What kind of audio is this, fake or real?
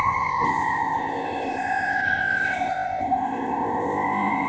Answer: fake